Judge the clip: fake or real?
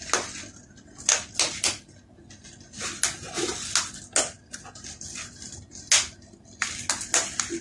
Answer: real